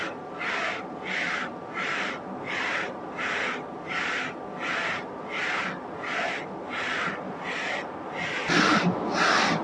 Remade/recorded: recorded